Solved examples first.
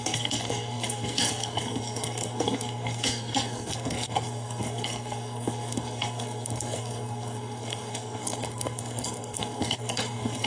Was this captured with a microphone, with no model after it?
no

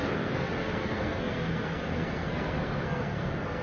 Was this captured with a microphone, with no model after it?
no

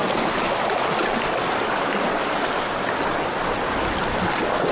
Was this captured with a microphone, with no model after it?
yes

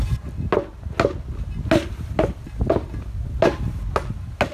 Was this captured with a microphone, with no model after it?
yes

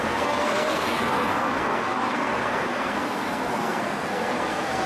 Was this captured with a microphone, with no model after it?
no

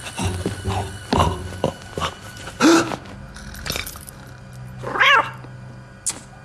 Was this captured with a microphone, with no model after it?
yes